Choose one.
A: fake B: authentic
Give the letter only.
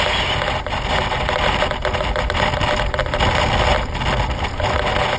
B